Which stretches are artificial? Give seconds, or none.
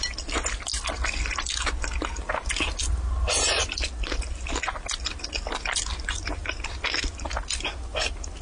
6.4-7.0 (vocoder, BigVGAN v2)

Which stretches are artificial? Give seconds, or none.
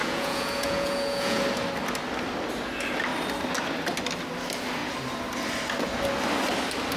0.0-1.4 (vocoder, Vocos)